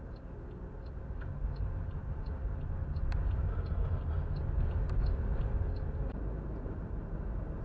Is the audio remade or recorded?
recorded